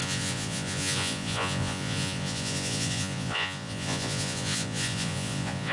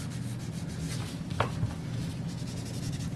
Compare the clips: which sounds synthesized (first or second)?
first